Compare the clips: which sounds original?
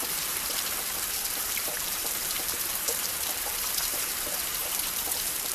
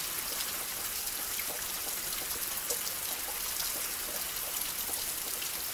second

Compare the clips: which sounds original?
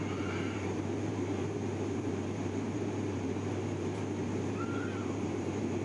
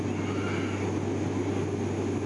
second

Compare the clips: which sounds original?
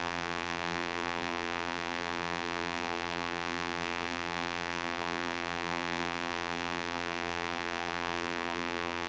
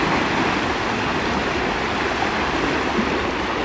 second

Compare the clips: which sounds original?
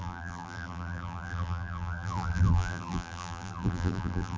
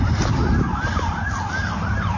second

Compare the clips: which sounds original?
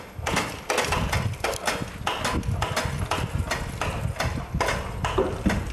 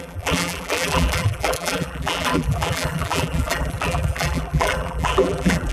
first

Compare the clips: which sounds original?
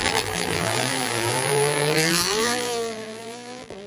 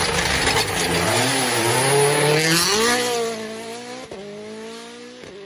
second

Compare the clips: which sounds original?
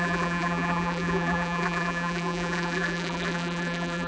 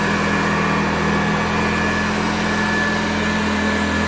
second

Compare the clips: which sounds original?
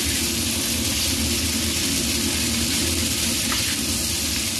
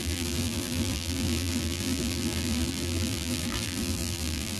first